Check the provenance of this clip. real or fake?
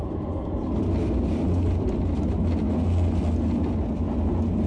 real